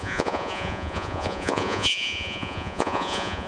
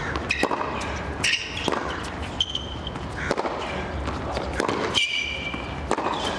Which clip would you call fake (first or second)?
first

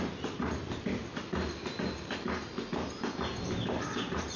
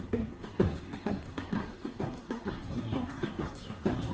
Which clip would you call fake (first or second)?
second